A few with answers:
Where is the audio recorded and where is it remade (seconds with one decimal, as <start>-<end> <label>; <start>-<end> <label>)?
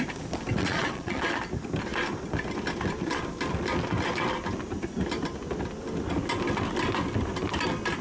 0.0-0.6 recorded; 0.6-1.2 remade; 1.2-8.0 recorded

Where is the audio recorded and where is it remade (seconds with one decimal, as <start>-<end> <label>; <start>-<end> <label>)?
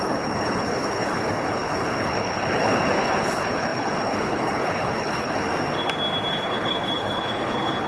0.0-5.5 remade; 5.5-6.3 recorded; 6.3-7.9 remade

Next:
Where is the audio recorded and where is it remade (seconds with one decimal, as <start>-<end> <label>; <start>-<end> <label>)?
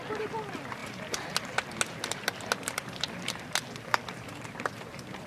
0.0-5.3 recorded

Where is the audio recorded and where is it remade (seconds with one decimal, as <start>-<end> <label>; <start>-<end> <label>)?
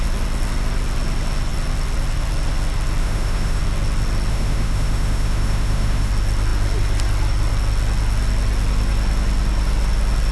0.0-3.0 recorded; 3.0-3.6 remade; 3.6-4.3 recorded; 4.3-6.1 remade; 6.1-10.3 recorded